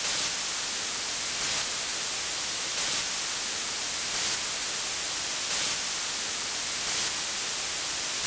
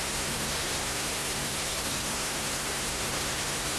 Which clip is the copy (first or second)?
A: second